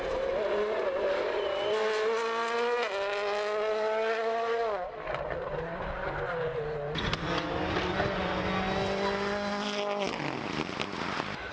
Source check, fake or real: real